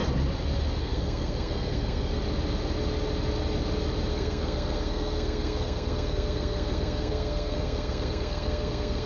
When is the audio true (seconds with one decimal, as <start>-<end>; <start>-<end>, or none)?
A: 0.0-0.8; 2.1-4.1